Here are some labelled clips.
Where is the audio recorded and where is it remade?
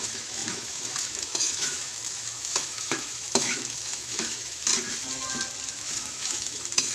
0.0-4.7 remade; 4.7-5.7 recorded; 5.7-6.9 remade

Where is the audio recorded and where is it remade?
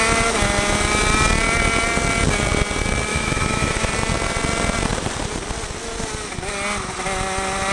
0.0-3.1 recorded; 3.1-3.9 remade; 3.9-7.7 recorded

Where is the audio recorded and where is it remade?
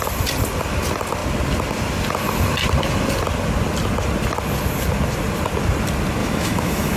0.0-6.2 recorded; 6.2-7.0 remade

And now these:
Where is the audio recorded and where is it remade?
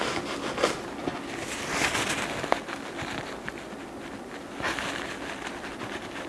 0.0-6.3 recorded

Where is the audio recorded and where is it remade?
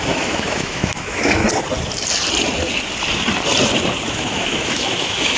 0.0-1.4 remade; 1.4-4.1 recorded; 4.1-5.4 remade